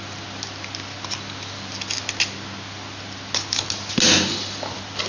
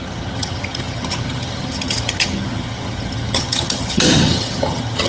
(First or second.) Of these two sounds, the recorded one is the first